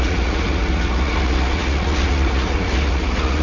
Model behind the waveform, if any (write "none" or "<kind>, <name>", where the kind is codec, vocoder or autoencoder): vocoder, Vocos